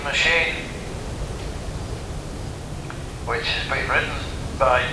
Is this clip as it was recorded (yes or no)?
yes